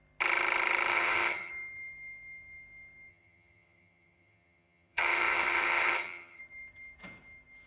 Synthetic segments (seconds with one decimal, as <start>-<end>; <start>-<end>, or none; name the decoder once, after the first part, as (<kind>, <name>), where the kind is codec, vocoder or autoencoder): 0.9-1.5 (vocoder, HiFi-GAN); 3.1-6.4